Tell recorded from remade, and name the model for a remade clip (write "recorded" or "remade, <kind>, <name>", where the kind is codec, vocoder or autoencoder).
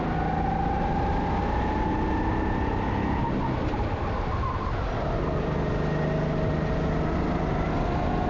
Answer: recorded